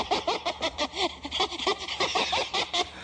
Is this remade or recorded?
recorded